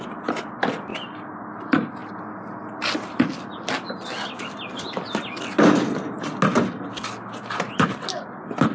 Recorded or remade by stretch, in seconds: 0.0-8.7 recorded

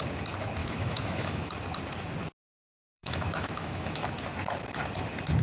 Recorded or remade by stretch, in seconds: 0.0-0.6 recorded; 0.6-1.5 remade; 1.5-2.4 recorded; 2.4-4.1 remade; 4.1-5.4 recorded

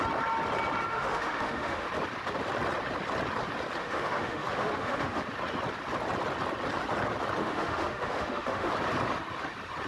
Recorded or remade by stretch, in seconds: 0.0-0.9 recorded; 0.9-1.9 remade; 1.9-3.8 recorded; 3.8-5.2 remade; 5.2-7.4 recorded; 7.4-8.7 remade; 8.7-9.9 recorded